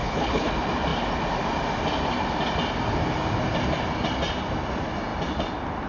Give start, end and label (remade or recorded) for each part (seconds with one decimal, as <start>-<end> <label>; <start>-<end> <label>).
0.0-0.5 remade; 0.5-5.9 recorded